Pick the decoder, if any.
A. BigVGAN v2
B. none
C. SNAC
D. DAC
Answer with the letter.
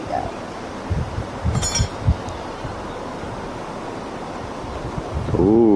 B